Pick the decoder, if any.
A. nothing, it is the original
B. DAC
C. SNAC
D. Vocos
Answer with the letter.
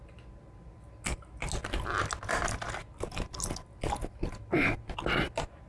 A